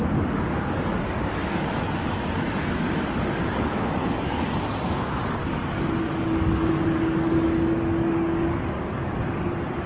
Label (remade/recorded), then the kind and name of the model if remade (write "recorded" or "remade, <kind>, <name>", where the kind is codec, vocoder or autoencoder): remade, codec, DAC